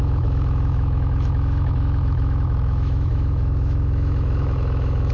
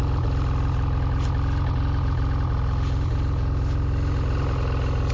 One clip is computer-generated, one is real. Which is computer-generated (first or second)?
first